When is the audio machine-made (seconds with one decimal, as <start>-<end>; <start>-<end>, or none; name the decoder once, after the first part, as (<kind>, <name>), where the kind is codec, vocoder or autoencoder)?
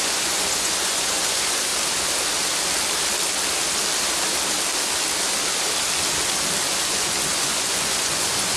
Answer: 0.0-1.7 (vocoder, Vocos); 6.9-8.6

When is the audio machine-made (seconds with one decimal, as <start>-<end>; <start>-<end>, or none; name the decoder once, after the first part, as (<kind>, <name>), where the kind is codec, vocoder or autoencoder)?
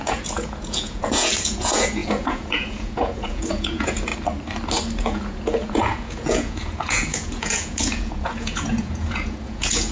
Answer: 0.0-4.1 (vocoder, Vocos); 5.0-9.9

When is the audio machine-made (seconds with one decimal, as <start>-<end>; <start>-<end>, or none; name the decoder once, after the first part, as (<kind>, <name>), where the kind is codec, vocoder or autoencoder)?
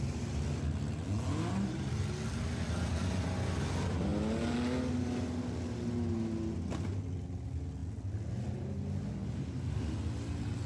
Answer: none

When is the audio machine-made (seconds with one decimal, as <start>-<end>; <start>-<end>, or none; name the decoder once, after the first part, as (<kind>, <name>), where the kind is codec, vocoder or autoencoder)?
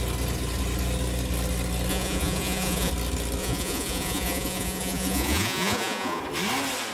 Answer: 1.9-2.9 (vocoder, Vocos); 3.4-6.2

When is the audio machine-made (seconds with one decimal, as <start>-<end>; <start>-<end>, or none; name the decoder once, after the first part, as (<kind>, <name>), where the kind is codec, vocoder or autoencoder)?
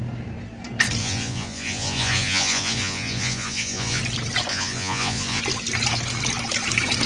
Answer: 1.0-4.0 (vocoder, Vocos); 4.5-5.4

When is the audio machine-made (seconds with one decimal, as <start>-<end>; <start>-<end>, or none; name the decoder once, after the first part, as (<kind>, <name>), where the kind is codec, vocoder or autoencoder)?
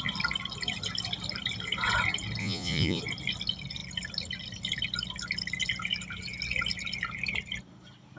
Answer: 2.4-3.0 (vocoder, Vocos)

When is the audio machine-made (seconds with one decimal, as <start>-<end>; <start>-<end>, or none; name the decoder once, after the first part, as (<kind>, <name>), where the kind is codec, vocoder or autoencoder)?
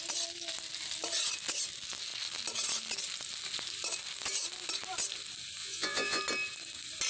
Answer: 5.6-6.2 (vocoder, Vocos)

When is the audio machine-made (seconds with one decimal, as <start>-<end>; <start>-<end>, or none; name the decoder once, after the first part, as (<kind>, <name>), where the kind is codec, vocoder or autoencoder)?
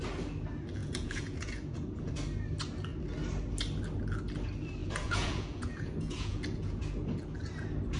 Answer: 0.8-2.1 (vocoder, Vocos); 4.8-6.8